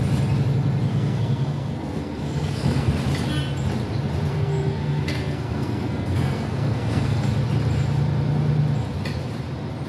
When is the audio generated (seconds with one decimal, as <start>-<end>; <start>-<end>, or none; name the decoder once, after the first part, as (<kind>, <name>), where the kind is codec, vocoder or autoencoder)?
0.9-2.9 (codec, SNAC); 4.3-7.2